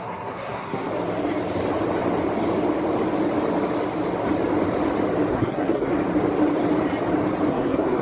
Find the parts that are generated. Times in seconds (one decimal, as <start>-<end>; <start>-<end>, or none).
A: 0.0-0.9; 5.3-5.9; 7.5-8.0